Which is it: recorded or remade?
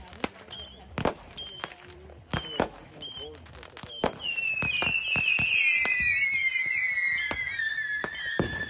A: recorded